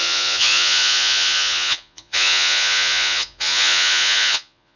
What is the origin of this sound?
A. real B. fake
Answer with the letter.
B